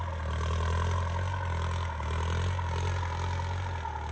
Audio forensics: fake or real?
real